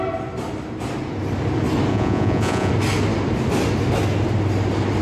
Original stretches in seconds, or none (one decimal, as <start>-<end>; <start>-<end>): 0.0-1.9; 2.7-5.0